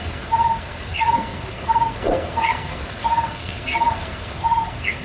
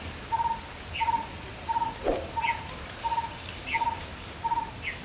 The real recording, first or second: second